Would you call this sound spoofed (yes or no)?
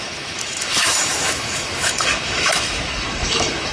yes